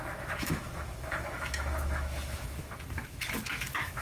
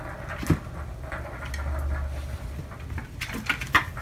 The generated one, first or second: first